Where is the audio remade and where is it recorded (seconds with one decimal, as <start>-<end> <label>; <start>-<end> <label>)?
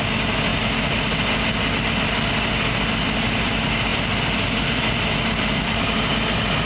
0.0-6.7 recorded